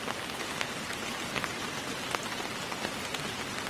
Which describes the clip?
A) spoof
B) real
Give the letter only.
B